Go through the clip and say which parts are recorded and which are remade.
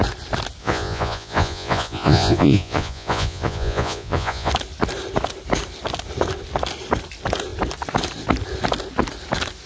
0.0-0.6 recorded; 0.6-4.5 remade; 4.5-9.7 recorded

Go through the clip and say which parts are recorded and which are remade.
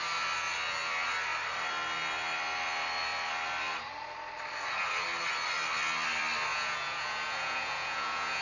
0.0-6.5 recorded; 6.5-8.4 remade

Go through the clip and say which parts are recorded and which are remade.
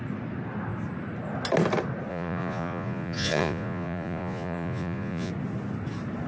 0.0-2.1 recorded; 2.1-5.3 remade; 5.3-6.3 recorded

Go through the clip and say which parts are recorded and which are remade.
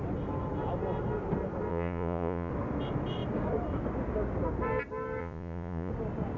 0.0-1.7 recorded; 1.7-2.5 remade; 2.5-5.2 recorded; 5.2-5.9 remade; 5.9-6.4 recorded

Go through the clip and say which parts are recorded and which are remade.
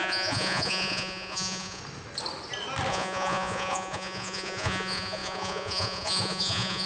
0.0-1.8 remade; 1.8-2.9 recorded; 2.9-6.9 remade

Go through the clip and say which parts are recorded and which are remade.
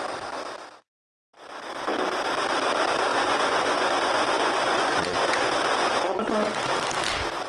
0.0-3.1 recorded; 3.1-6.5 remade; 6.5-7.5 recorded